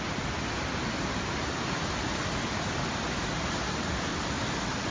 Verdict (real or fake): real